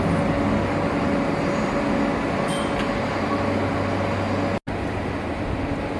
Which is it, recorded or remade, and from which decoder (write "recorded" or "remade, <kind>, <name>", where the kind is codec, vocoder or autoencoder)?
recorded